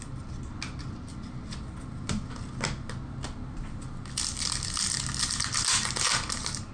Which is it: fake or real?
real